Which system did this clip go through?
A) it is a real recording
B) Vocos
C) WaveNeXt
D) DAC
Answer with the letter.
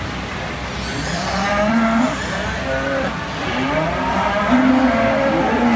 A